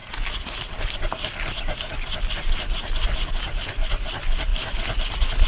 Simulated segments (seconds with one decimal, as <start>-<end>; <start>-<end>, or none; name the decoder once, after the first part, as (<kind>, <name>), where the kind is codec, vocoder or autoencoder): none